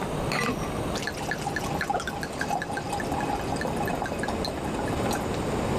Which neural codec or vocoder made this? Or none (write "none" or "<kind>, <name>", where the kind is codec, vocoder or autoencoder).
none